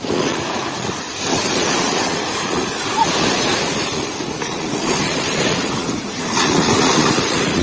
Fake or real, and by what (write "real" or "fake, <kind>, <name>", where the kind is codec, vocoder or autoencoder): fake, vocoder, Vocos